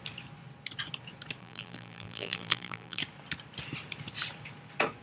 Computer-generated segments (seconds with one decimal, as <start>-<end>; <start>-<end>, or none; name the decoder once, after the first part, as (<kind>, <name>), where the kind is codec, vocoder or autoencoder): 1.4-3.0 (vocoder, BigVGAN v2)